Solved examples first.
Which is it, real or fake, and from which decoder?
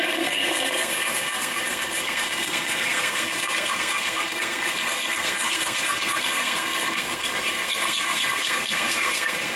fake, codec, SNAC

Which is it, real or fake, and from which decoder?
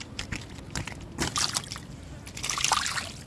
real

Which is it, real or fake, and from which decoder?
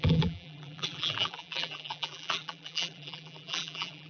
fake, vocoder, BigVGAN v2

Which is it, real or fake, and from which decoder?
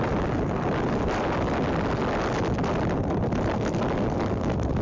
real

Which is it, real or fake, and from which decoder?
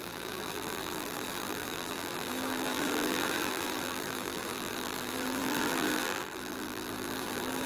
fake, vocoder, BigVGAN v2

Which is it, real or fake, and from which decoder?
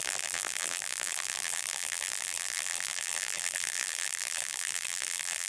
fake, vocoder, BigVGAN v2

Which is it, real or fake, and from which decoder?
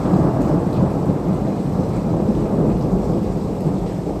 real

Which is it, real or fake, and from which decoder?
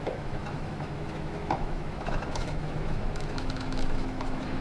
fake, autoencoder, DAC-VAE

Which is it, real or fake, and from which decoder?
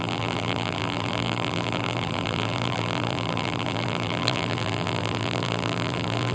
fake, vocoder, BigVGAN v2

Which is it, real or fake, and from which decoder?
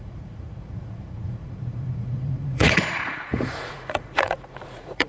fake, vocoder, Vocos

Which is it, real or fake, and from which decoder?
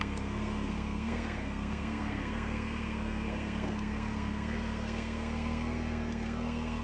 fake, codec, SNAC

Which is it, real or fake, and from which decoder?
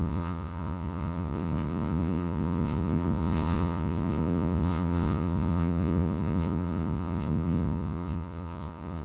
fake, vocoder, Vocos